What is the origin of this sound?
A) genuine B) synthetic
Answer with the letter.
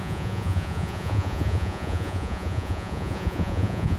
B